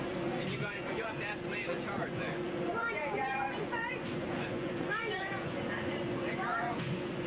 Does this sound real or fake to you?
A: fake